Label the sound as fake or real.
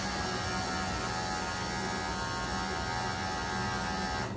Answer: real